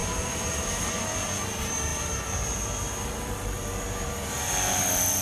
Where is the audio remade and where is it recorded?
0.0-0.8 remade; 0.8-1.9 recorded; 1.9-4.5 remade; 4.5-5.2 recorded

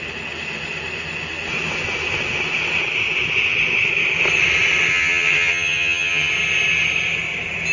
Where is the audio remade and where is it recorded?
0.0-4.9 recorded; 4.9-6.3 remade; 6.3-7.7 recorded

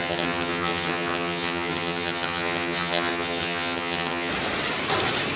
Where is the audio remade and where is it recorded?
0.0-4.3 remade; 4.3-5.4 recorded